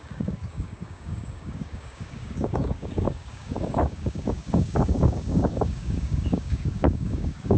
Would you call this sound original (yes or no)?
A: no